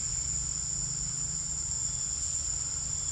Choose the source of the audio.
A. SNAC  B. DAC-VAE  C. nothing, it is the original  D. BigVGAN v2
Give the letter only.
C